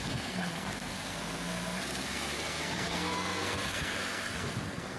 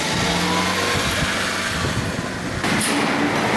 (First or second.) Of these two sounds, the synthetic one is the first